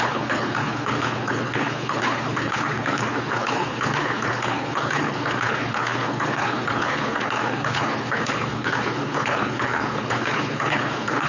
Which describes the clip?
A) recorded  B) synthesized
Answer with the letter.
B